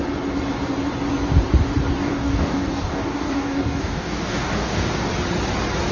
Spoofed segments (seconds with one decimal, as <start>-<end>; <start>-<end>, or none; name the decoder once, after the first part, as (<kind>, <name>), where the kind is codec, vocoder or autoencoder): 2.0-5.1 (codec, DAC)

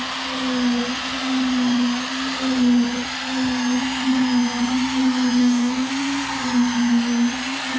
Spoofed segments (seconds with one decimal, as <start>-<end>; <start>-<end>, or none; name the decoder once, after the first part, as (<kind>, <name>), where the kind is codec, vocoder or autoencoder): 5.4-5.9 (codec, DAC)

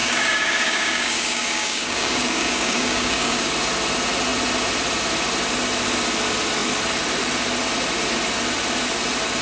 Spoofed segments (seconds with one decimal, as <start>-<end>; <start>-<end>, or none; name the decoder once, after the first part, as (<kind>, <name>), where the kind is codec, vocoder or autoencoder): 0.0-3.5 (codec, DAC)

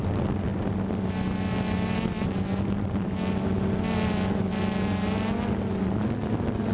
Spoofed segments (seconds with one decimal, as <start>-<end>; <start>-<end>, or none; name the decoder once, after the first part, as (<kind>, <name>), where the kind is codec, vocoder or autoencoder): none

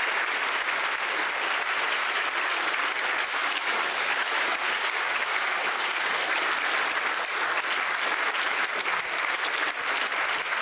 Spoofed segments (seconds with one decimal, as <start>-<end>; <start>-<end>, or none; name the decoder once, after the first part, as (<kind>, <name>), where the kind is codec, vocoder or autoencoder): 3.4-6.2 (codec, DAC)

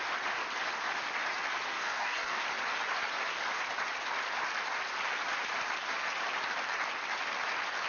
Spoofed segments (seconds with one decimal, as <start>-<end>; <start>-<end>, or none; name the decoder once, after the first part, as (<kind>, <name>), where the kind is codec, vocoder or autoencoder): 1.7-2.4 (codec, DAC)